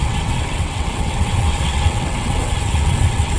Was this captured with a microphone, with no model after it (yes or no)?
no